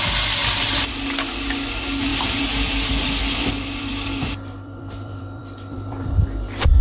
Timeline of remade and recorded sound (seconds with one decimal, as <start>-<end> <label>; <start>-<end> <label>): 0.0-0.4 recorded; 0.4-0.9 remade; 0.9-2.1 recorded; 2.1-6.2 remade; 6.2-6.8 recorded